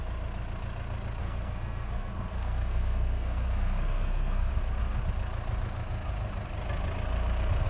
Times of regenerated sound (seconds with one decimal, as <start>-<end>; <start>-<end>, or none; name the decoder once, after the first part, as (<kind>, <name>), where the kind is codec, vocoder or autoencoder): 1.2-4.5 (codec, SNAC)